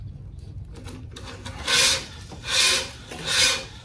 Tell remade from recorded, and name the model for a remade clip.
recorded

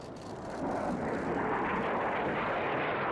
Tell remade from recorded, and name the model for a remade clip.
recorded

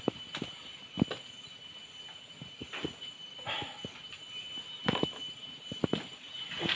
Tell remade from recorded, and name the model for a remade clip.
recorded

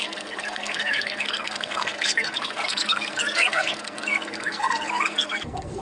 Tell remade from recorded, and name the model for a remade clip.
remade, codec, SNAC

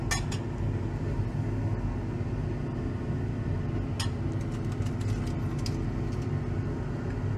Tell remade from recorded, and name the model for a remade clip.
recorded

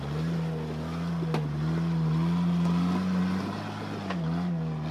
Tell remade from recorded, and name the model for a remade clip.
recorded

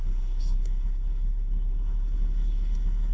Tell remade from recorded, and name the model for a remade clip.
remade, codec, SNAC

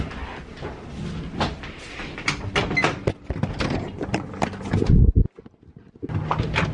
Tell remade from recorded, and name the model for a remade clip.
recorded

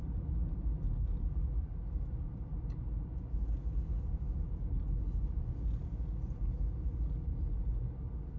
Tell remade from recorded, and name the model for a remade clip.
recorded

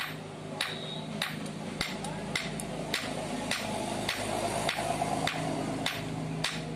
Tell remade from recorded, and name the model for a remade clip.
recorded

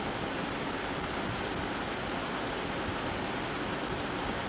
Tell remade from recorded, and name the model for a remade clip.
recorded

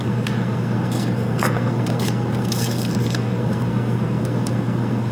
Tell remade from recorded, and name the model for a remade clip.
remade, codec, SNAC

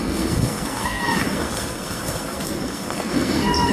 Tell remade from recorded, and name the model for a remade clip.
remade, codec, SNAC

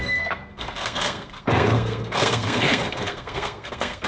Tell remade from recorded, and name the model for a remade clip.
remade, codec, SNAC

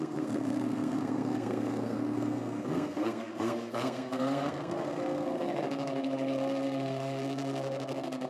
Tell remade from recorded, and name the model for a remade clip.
remade, codec, SNAC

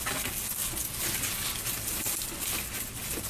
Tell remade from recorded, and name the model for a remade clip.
recorded